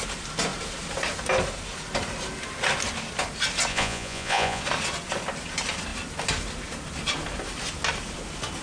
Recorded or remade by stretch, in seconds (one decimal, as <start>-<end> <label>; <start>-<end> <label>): 0.0-3.7 recorded; 3.7-4.6 remade; 4.6-8.6 recorded